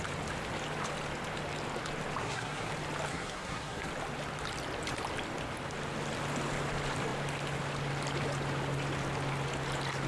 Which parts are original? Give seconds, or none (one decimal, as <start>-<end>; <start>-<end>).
0.0-2.2; 2.7-3.1; 3.9-10.1